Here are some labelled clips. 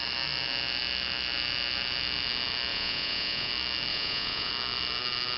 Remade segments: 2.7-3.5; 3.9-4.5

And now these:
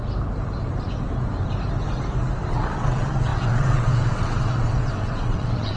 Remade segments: 2.5-5.8

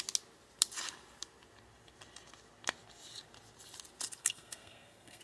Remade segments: 4.2-5.2

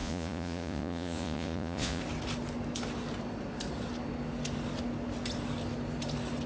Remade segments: 0.0-2.0

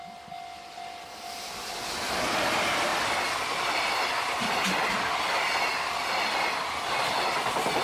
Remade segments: none